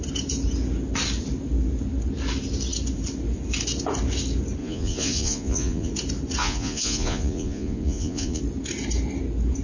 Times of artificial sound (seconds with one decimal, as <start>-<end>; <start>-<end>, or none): 4.6-5.9; 6.4-8.4